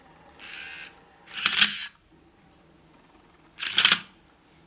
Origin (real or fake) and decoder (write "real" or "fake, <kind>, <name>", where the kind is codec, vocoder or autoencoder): real